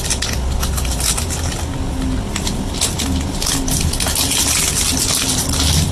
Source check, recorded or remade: recorded